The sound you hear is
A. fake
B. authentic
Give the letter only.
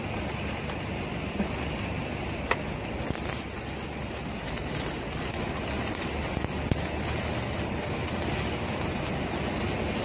B